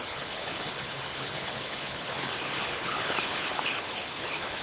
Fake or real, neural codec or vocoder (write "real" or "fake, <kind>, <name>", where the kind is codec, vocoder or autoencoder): fake, codec, HILCodec